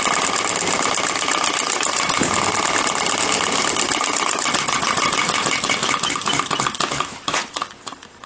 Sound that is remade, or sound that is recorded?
recorded